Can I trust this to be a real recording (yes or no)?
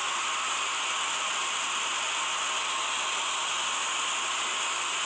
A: yes